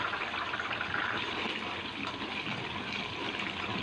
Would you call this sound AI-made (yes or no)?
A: no